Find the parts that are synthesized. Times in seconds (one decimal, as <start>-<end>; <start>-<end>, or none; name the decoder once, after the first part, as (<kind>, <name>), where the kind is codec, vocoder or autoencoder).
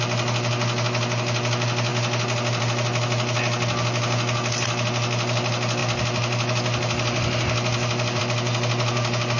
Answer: none